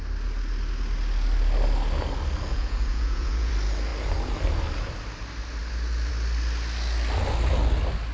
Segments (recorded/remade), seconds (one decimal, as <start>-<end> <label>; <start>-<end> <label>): 0.0-2.5 recorded; 2.5-3.5 remade; 3.5-8.1 recorded